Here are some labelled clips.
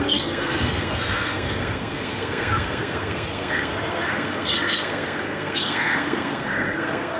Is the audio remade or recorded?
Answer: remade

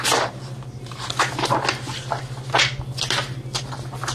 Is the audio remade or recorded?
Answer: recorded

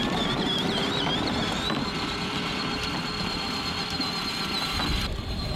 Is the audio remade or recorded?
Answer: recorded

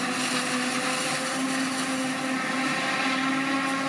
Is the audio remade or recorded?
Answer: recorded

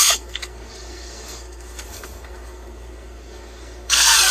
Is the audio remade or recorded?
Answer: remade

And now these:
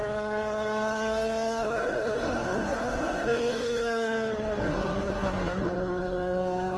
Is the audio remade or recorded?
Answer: remade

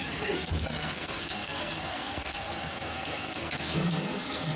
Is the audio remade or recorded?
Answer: remade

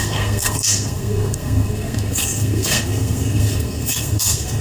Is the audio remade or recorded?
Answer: remade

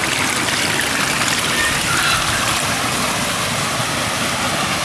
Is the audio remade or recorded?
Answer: recorded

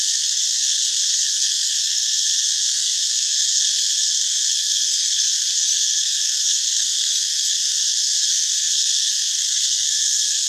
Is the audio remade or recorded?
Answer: remade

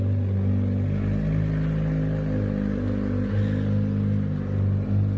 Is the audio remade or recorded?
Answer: recorded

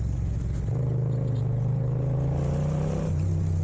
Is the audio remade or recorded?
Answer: recorded